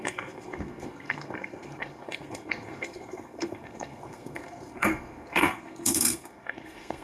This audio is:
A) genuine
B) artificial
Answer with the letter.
B